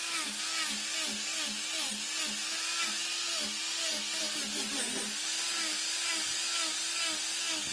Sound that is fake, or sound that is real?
real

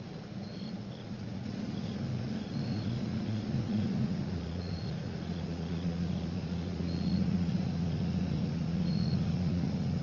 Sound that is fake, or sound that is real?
fake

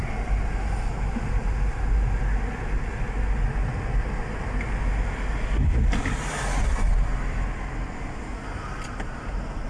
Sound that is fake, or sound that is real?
real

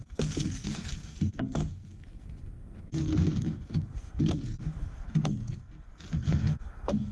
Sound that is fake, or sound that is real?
fake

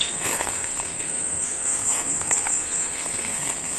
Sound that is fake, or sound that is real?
fake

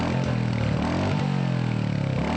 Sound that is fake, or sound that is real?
real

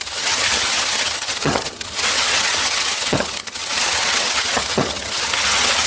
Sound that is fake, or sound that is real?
fake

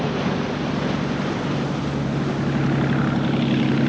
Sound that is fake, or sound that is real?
real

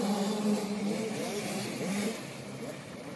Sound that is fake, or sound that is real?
fake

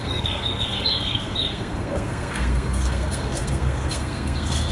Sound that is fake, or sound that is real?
fake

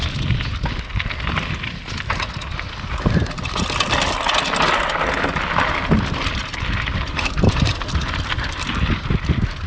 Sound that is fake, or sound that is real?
real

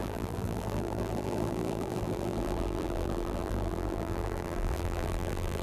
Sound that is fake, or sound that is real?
fake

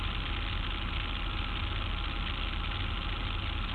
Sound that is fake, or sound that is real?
real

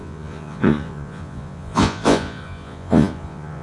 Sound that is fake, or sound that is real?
fake